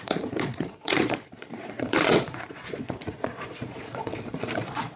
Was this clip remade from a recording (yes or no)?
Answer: yes